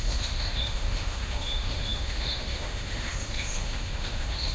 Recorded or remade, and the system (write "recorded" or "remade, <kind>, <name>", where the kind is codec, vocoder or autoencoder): remade, autoencoder, DAC-VAE